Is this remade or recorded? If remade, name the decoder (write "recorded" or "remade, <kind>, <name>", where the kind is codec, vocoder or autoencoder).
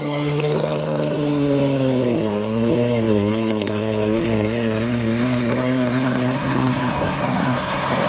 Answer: remade, codec, SNAC